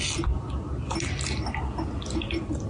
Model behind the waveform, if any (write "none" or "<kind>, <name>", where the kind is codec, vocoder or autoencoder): none